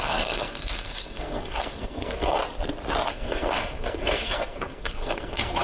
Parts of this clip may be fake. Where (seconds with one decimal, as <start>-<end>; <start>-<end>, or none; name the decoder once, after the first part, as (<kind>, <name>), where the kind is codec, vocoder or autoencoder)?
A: 0.0-2.4 (codec, SNAC); 3.1-5.6

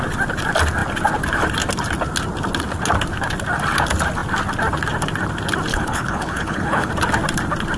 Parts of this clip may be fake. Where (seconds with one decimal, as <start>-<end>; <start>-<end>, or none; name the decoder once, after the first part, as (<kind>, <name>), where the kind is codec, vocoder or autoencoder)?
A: 5.7-6.9 (codec, HILCodec)

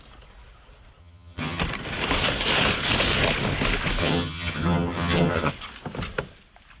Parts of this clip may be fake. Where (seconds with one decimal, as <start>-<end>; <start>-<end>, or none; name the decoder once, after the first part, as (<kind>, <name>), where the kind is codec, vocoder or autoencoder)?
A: 1.0-1.6 (vocoder, HiFi-GAN); 4.0-5.5

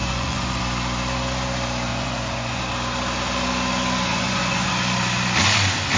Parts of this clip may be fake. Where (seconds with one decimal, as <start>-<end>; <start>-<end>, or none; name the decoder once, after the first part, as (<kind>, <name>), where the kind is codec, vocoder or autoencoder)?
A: 0.0-0.6 (vocoder, Vocos); 1.9-2.6; 4.1-4.8